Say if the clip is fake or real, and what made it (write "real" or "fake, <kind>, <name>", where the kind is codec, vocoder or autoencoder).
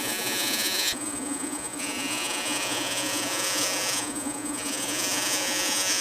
fake, vocoder, Vocos